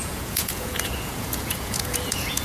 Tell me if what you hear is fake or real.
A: fake